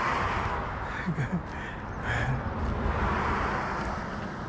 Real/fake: real